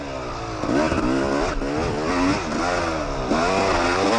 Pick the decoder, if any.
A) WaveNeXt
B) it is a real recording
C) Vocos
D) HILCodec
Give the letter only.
B